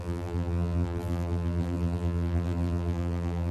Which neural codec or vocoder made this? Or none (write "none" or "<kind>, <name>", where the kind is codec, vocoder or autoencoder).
vocoder, BigVGAN v2